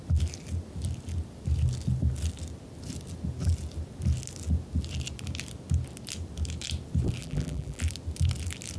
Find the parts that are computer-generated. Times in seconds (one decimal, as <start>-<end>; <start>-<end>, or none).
7.2-7.8